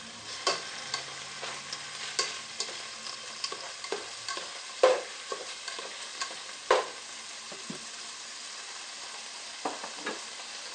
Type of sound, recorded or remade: recorded